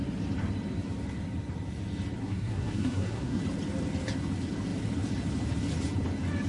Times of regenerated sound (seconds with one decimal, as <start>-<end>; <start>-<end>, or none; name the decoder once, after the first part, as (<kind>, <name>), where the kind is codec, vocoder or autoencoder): 2.2-3.4 (codec, SNAC)